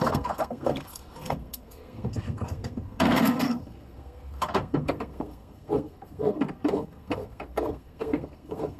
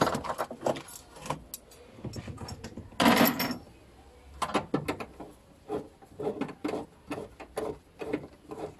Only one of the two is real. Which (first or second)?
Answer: second